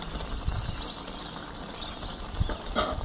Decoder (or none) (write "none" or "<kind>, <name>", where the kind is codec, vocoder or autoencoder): none